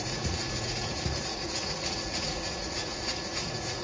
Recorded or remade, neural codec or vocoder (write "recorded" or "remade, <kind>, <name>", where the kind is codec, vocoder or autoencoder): remade, vocoder, Vocos